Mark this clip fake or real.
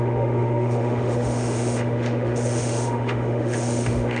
fake